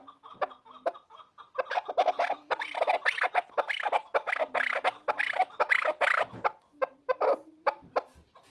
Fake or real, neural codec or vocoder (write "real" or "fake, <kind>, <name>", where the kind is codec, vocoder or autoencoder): real